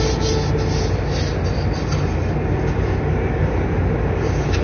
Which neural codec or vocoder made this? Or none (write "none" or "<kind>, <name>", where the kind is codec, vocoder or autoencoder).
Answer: none